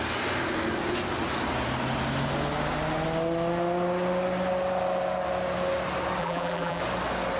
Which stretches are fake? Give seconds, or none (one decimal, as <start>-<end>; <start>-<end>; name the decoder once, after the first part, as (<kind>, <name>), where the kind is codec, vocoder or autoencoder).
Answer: 6.2-6.8 (vocoder, BigVGAN v2)